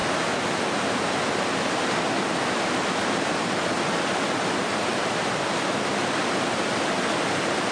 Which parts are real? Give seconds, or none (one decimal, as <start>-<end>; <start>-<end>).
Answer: 0.0-7.7